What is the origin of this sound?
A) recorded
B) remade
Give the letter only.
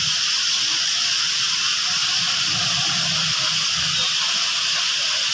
A